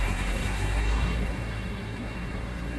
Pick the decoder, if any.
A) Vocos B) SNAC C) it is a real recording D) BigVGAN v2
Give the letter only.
B